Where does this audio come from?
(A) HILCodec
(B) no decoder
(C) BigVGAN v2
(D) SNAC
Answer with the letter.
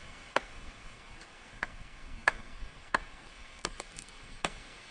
D